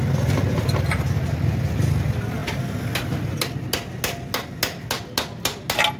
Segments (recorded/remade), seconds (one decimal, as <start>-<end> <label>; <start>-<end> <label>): 0.0-6.0 recorded